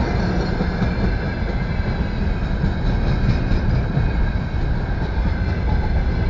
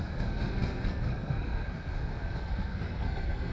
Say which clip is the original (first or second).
first